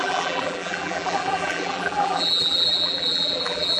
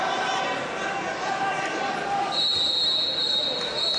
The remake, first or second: first